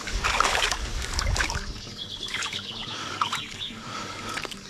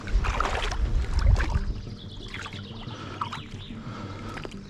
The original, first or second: second